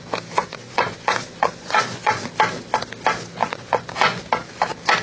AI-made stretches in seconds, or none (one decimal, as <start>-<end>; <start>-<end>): 0.4-2.3; 3.4-4.2